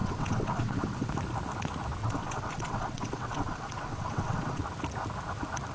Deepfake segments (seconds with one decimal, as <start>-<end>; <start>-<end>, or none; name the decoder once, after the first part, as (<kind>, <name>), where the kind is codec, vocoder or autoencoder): 0.0-1.1 (vocoder, WaveNeXt); 2.0-4.6